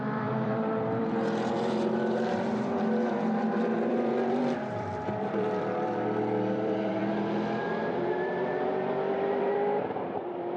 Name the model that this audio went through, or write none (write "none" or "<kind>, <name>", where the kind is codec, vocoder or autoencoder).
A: vocoder, BigVGAN v2